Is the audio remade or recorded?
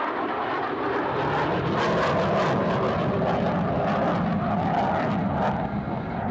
recorded